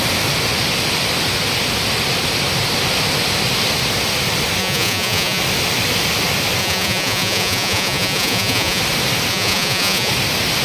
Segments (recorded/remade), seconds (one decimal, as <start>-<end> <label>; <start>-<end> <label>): 0.0-4.6 recorded; 4.6-5.4 remade; 5.4-6.6 recorded; 6.6-8.8 remade; 8.8-9.3 recorded; 9.3-10.1 remade; 10.1-10.6 recorded